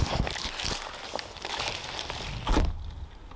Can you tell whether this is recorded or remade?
recorded